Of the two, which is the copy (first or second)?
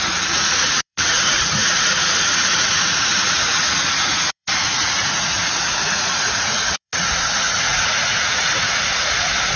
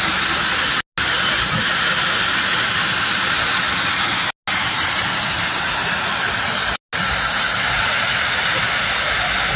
first